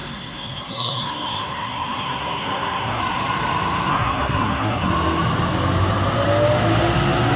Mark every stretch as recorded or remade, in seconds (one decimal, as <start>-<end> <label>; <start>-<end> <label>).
0.0-3.0 remade; 3.0-3.9 recorded; 3.9-4.9 remade; 4.9-7.4 recorded